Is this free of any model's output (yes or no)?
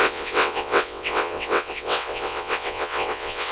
no